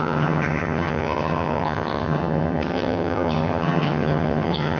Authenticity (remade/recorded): remade